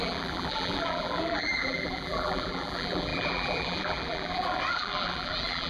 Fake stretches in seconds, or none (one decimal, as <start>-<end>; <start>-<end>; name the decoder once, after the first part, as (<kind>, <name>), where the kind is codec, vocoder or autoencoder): 0.0-5.7 (vocoder, BigVGAN v2)

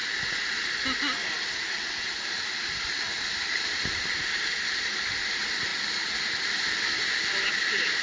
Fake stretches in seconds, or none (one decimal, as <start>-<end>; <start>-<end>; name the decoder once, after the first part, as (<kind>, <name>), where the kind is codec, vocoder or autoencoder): none

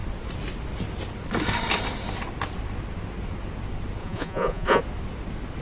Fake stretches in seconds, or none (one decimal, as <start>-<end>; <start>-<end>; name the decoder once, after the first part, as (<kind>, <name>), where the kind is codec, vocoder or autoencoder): 4.0-4.8 (vocoder, Vocos)

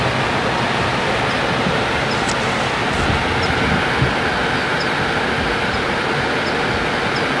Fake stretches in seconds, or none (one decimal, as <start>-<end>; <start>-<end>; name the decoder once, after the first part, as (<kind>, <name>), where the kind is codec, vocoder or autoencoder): none